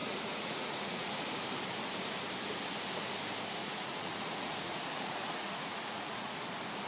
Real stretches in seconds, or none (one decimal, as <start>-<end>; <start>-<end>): 1.3-3.6; 6.4-6.9